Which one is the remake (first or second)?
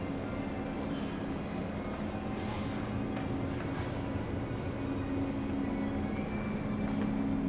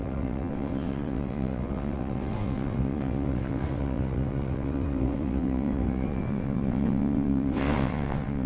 second